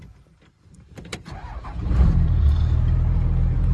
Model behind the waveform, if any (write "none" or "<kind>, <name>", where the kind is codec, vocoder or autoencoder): vocoder, BigVGAN v2